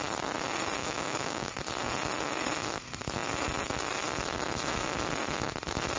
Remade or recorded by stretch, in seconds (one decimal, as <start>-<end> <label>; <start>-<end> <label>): 0.0-0.8 recorded; 0.8-1.5 remade; 1.5-6.0 recorded